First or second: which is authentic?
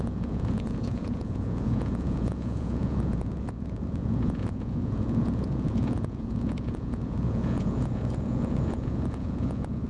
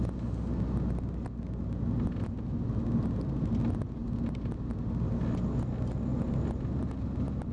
second